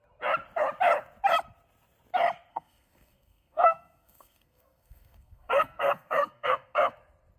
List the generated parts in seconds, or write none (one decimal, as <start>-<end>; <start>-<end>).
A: 2.5-6.9